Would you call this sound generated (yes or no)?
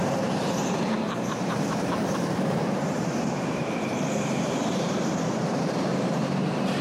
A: yes